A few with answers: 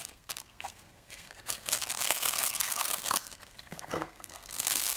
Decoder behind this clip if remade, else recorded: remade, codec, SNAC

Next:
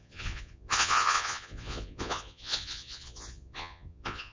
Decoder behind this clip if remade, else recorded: remade, vocoder, Vocos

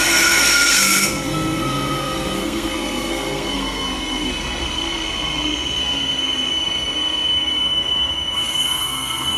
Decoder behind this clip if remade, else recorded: remade, codec, SNAC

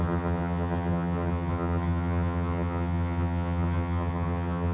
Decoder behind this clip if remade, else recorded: remade, vocoder, HiFi-GAN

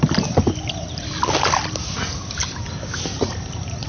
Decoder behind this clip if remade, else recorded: recorded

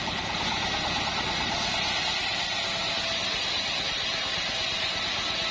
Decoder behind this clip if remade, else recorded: recorded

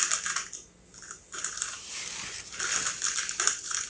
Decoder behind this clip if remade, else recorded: recorded